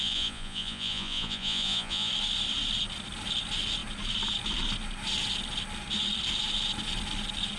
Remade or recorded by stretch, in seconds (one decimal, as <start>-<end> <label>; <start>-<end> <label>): 0.0-2.1 remade; 2.1-7.6 recorded